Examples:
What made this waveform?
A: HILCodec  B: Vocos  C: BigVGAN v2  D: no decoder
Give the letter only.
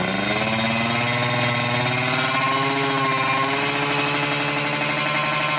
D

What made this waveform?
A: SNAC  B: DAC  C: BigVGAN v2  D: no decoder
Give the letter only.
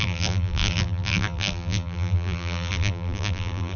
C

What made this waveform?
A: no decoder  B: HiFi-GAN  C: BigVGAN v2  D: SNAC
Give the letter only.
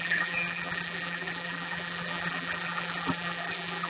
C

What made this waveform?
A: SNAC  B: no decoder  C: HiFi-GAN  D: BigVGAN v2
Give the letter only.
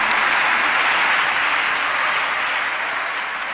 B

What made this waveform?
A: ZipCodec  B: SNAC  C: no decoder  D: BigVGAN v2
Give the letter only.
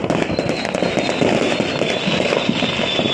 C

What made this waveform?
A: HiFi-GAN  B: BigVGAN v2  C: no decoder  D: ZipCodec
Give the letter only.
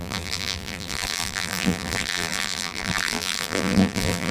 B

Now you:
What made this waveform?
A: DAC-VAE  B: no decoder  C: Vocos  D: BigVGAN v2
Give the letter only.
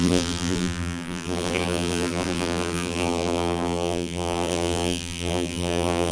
D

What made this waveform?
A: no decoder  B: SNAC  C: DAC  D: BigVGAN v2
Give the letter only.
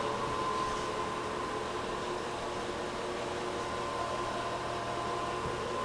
A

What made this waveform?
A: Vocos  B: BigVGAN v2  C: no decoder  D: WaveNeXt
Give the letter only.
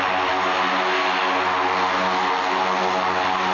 C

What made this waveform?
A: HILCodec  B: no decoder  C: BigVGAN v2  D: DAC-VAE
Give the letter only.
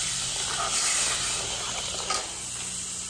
B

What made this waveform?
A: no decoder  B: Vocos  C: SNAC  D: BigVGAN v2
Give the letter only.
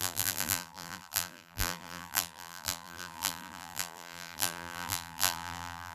D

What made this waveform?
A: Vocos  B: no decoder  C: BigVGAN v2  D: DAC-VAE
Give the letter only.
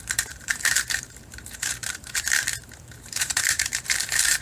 C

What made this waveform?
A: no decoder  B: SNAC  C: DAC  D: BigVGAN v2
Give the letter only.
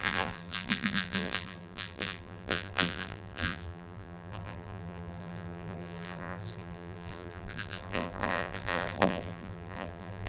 D